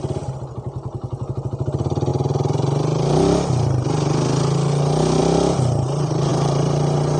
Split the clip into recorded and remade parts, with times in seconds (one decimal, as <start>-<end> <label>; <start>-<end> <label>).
0.0-6.3 recorded; 6.3-7.2 remade